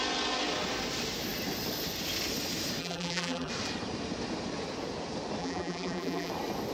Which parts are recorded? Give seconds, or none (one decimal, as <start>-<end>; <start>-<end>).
0.0-2.8; 3.5-5.4; 6.3-6.7